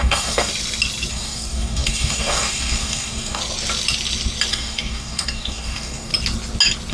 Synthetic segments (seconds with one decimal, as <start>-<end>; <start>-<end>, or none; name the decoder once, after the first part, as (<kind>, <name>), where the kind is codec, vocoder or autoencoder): 0.0-0.5 (codec, DAC); 1.1-3.4; 4.5-6.1